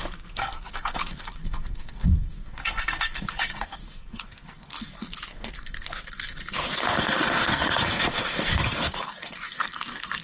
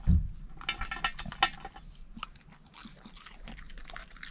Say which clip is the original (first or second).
second